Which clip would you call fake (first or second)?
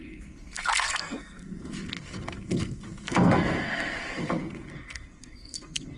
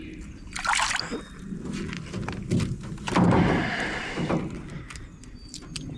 first